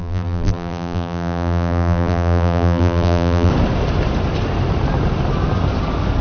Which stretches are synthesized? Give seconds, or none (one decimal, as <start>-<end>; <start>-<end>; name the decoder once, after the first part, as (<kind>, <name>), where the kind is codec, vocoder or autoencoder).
0.0-3.5 (vocoder, BigVGAN v2)